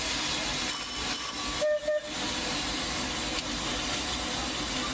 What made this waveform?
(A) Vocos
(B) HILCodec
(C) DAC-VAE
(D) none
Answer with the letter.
D